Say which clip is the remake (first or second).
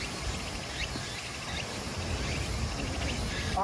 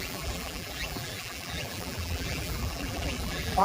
second